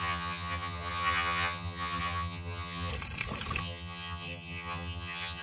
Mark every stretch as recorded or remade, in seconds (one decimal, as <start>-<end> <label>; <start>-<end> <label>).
0.0-2.9 remade; 2.9-3.6 recorded; 3.6-5.4 remade

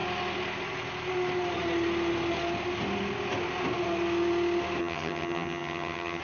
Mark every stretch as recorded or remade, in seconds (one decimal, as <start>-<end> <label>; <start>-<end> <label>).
0.0-4.8 recorded; 4.8-6.2 remade

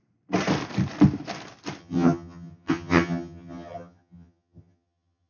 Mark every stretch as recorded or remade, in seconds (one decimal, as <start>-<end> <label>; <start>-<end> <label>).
0.0-1.8 recorded; 1.8-5.3 remade

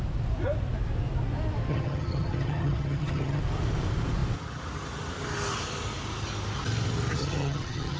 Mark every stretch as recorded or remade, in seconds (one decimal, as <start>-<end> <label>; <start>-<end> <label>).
0.0-1.7 recorded; 1.7-3.4 remade; 3.4-7.2 recorded; 7.2-8.0 remade

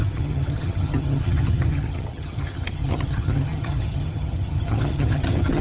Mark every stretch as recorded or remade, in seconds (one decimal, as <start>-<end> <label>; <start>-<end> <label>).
0.0-5.6 remade

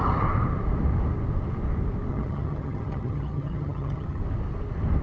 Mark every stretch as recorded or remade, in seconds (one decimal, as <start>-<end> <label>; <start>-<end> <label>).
0.0-2.1 recorded; 2.1-4.2 remade; 4.2-5.0 recorded

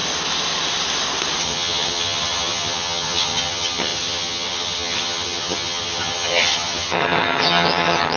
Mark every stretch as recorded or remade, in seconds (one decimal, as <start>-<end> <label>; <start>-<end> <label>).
0.0-1.4 recorded; 1.4-8.2 remade